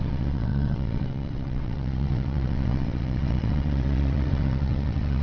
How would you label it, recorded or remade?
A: remade